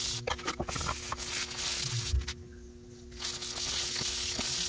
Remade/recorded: recorded